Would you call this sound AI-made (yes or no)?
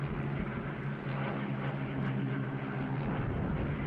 no